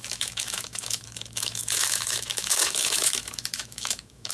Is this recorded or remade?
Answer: remade